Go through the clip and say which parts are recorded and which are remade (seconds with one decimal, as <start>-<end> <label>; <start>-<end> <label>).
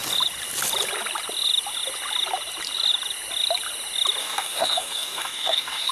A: 0.0-4.2 recorded; 4.2-5.9 remade